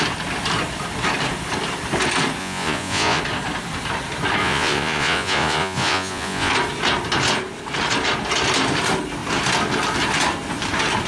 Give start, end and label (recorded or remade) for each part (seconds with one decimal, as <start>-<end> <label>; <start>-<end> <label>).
0.0-2.4 recorded; 2.4-3.2 remade; 3.2-4.4 recorded; 4.4-6.5 remade; 6.5-11.1 recorded